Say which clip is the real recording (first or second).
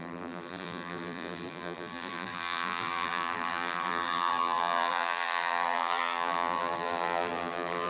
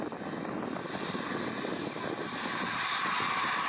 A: second